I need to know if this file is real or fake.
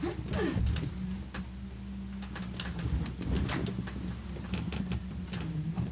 real